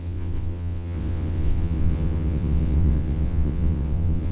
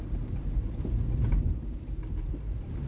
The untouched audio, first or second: second